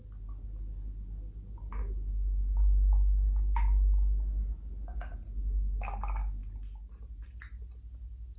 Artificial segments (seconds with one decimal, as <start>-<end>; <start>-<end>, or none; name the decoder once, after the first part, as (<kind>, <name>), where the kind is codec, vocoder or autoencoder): none